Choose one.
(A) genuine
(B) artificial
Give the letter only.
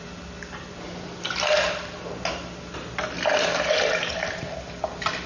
A